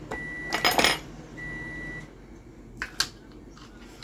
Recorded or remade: recorded